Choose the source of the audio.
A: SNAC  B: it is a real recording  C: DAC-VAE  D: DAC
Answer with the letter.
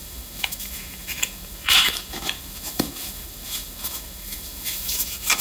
C